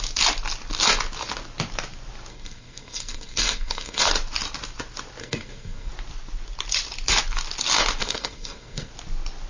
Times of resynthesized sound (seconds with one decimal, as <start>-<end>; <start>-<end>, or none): 2.3-4.1; 5.2-5.9; 8.0-8.9